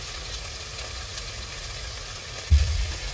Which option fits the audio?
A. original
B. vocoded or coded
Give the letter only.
B